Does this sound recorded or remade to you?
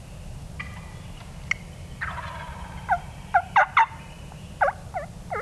recorded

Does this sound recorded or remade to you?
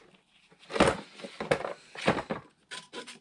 recorded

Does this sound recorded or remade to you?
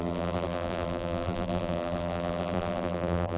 remade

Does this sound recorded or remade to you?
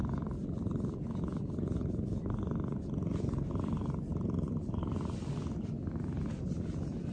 remade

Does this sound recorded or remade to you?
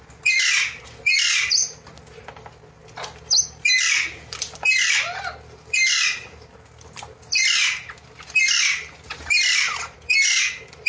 recorded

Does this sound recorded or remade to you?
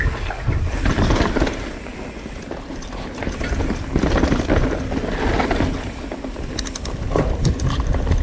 recorded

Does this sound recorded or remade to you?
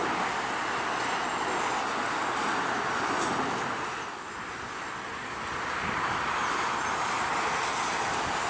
recorded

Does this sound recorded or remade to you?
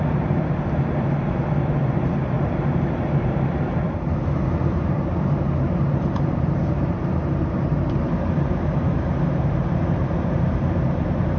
remade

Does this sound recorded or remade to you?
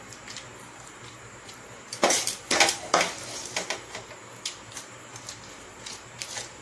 remade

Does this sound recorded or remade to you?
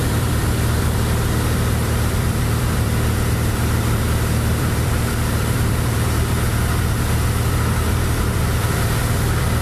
remade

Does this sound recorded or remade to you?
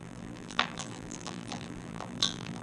remade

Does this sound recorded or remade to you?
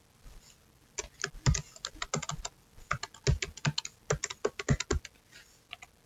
recorded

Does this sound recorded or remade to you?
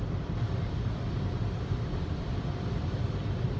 remade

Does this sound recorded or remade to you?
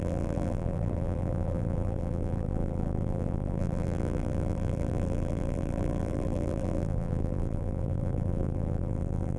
remade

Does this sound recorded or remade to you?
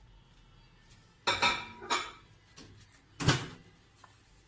recorded